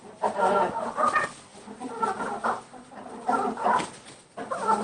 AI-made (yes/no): no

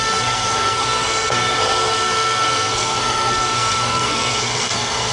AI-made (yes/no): yes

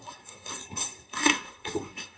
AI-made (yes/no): yes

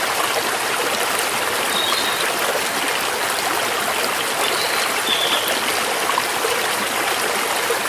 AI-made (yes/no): no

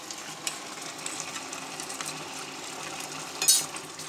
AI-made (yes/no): no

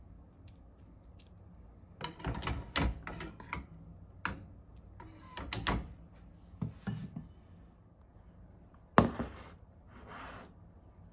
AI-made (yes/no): no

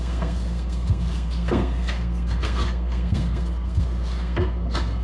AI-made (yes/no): yes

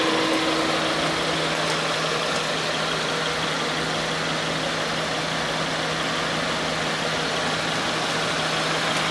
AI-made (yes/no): no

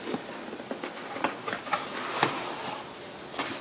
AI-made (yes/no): no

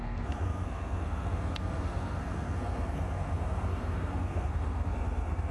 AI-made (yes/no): yes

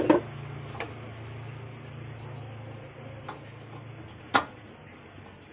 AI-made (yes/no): no